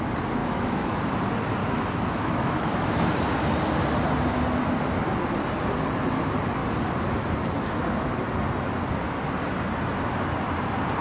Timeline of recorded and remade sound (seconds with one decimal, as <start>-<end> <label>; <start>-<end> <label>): 0.0-0.4 recorded; 0.4-1.0 remade; 1.0-1.6 recorded; 1.6-3.1 remade; 3.1-11.0 recorded